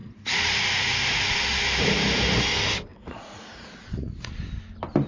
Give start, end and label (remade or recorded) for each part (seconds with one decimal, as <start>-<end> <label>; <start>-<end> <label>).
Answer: 0.0-1.2 remade; 1.2-2.9 recorded; 2.9-4.3 remade; 4.3-5.1 recorded